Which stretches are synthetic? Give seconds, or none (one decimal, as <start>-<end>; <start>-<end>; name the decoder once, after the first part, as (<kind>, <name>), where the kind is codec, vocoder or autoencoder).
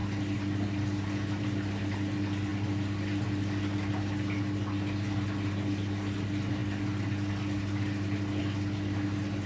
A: 0.0-1.4 (vocoder, BigVGAN v2); 2.5-4.4; 6.6-8.4